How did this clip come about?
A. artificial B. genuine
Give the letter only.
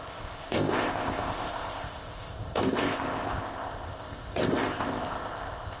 A